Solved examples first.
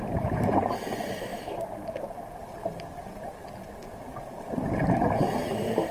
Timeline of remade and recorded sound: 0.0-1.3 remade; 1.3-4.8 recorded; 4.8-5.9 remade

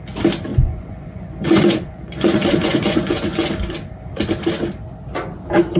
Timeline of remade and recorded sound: 0.0-0.5 recorded; 0.5-3.5 remade; 3.5-5.8 recorded

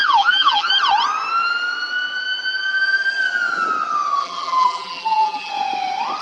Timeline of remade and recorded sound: 0.0-0.7 remade; 0.7-4.2 recorded; 4.2-5.5 remade; 5.5-6.2 recorded

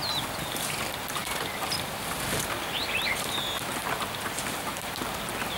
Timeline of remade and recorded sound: 0.0-1.2 recorded; 1.2-2.4 remade; 2.4-5.6 recorded

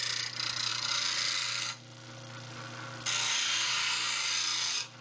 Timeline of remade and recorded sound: 0.0-5.0 recorded